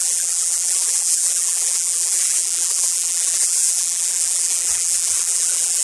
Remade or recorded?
remade